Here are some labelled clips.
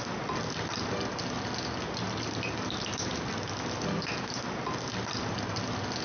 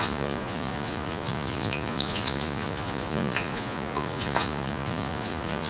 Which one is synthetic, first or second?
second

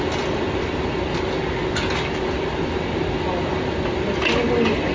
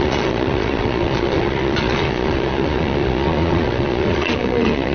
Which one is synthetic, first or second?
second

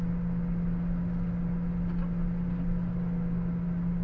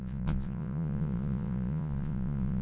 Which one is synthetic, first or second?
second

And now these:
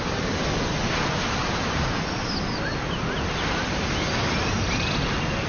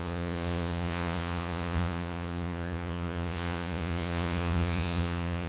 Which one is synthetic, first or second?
second